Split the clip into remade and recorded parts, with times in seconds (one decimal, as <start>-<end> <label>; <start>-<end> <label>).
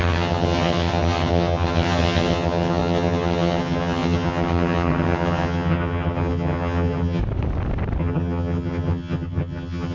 0.0-7.2 remade; 7.2-8.0 recorded; 8.0-9.9 remade